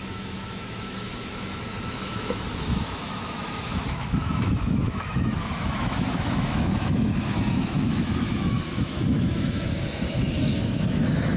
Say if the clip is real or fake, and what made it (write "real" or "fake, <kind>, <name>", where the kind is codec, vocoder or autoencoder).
fake, autoencoder, DAC-VAE